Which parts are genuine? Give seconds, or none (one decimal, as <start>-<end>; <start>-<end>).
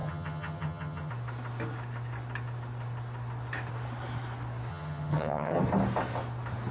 1.1-4.7; 5.6-6.7